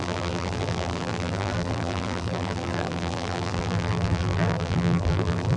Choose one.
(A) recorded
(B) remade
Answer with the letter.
B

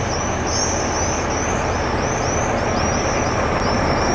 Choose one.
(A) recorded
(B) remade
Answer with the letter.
B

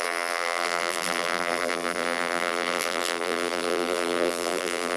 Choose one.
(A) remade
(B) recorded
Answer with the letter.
A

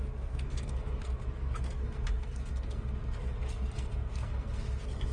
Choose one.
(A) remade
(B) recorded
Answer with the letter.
A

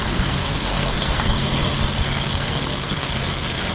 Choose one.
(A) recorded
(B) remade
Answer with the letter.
B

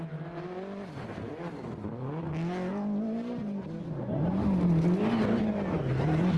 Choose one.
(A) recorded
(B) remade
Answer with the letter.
A